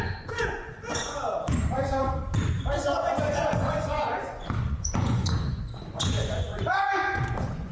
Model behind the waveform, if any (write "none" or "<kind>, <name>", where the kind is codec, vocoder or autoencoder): vocoder, Vocos